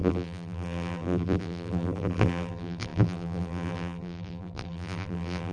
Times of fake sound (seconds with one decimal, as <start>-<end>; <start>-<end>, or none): 0.0-5.5